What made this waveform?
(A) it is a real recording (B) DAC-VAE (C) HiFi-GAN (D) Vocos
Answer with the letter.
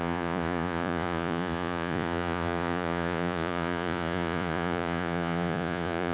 D